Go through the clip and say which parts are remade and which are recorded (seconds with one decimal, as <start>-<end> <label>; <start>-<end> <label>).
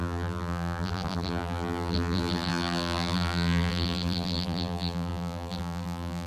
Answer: 0.0-6.3 remade